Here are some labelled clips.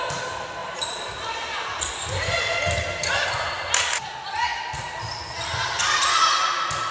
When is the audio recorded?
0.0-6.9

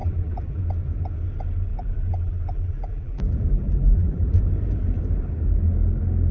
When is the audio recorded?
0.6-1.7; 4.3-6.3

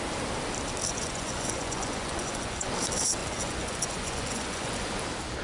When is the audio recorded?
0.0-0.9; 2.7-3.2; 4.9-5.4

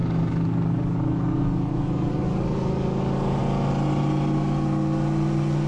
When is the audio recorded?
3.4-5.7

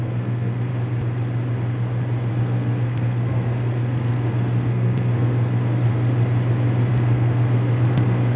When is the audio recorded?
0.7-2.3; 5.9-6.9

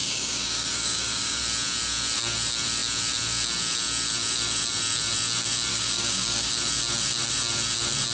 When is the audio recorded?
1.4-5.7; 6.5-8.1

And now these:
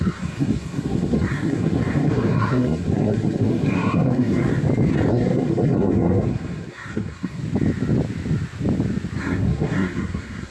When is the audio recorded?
4.5-5.1; 7.4-9.2

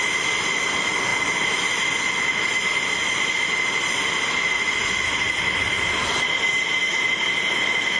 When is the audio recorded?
0.0-8.0